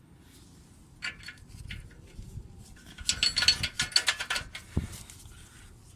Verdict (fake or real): real